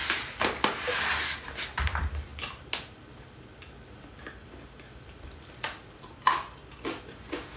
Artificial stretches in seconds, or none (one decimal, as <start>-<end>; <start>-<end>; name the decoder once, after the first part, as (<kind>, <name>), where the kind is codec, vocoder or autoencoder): none